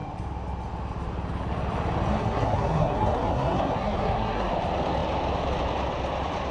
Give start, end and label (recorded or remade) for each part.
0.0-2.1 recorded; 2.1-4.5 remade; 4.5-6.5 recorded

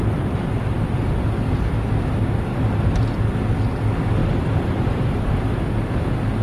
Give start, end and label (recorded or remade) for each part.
0.0-2.5 recorded; 2.5-3.2 remade; 3.2-4.2 recorded; 4.2-5.4 remade; 5.4-6.4 recorded

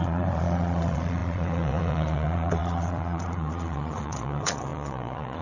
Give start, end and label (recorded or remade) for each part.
0.0-5.4 remade

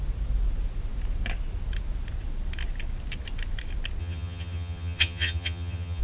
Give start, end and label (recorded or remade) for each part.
0.0-4.0 recorded; 4.0-6.0 remade